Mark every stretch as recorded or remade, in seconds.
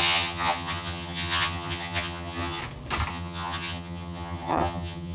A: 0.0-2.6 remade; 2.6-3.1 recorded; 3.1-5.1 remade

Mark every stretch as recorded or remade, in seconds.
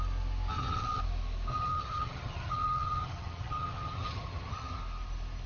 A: 0.0-0.5 recorded; 0.5-1.0 remade; 1.0-1.5 recorded; 1.5-4.8 remade; 4.8-5.5 recorded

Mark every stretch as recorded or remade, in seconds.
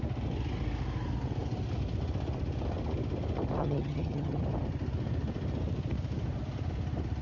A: 0.0-3.6 recorded; 3.6-4.4 remade; 4.4-7.2 recorded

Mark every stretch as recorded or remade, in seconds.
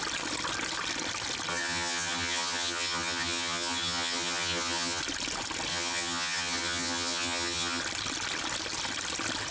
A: 0.0-1.5 recorded; 1.5-5.0 remade; 5.0-5.7 recorded; 5.7-7.8 remade; 7.8-9.5 recorded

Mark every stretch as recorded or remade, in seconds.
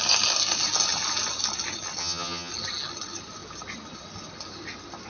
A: 0.0-2.0 recorded; 2.0-2.5 remade; 2.5-5.1 recorded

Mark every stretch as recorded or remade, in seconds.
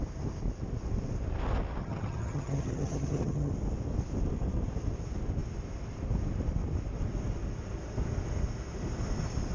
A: 0.0-1.8 recorded; 1.8-3.5 remade; 3.5-9.5 recorded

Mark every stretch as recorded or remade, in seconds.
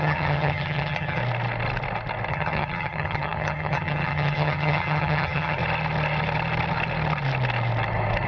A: 0.0-1.2 remade; 1.2-2.3 recorded; 2.3-5.6 remade; 5.6-8.3 recorded